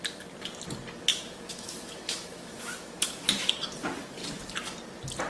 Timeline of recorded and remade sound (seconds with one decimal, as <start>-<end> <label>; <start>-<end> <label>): 0.0-1.1 recorded; 1.1-3.5 remade; 3.5-5.3 recorded